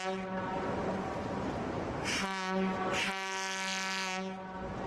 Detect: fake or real real